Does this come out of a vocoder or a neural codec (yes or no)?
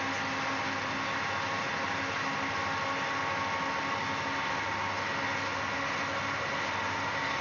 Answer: no